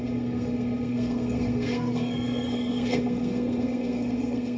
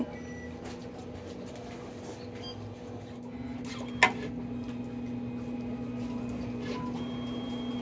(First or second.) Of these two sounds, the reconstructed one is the first